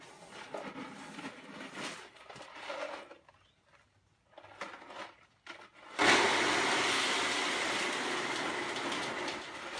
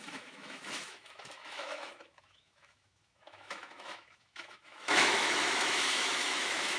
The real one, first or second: first